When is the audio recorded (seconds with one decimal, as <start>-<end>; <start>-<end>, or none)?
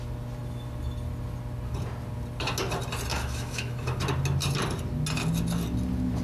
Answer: 0.0-3.1; 4.0-6.2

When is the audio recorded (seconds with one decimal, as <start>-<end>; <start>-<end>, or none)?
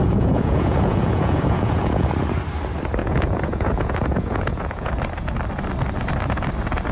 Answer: 2.1-3.0; 4.9-6.9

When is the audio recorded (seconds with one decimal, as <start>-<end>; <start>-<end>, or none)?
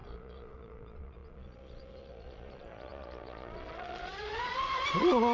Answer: none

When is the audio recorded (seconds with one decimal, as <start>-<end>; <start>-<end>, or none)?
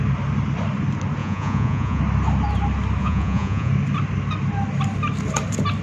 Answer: 0.0-1.2; 2.0-3.0; 3.7-5.8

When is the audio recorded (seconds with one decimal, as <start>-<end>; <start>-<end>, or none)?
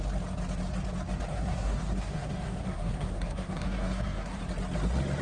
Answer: 0.0-1.3; 4.4-5.2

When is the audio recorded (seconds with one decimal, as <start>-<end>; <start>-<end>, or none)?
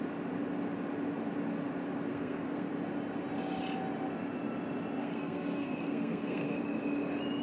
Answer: 0.0-2.1; 2.7-5.0; 6.6-7.4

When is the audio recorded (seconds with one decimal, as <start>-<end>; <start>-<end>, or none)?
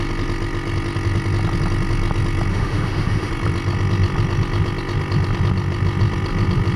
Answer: 0.0-2.5; 3.3-6.8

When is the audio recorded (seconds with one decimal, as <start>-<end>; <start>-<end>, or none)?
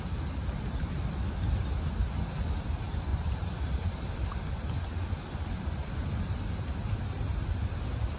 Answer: 0.0-3.1; 4.4-8.2